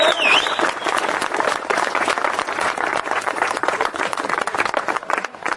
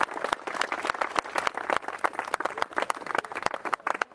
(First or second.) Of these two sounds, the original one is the second